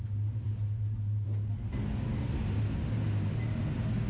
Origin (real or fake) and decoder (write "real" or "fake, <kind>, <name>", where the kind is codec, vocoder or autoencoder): real